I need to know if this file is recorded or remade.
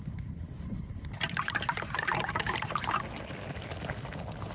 recorded